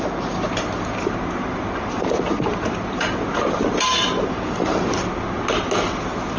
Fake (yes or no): no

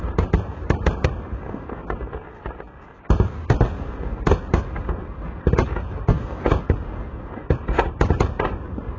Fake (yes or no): no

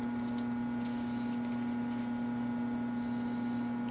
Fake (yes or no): no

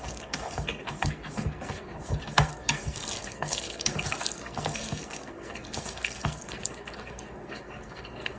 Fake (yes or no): yes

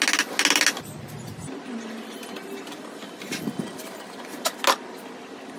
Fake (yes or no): no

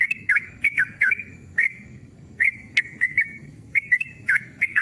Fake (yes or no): yes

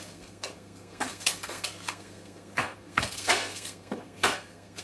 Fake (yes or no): yes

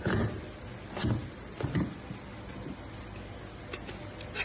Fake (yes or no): no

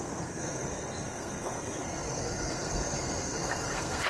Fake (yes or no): yes